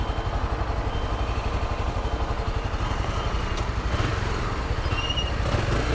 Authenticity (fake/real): real